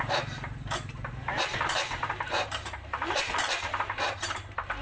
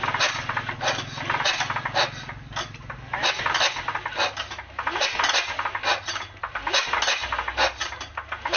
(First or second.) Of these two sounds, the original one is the second